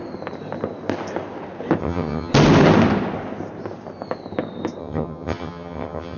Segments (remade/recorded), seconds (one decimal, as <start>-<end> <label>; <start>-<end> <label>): 0.0-1.8 recorded; 1.8-2.3 remade; 2.3-4.8 recorded; 4.8-6.2 remade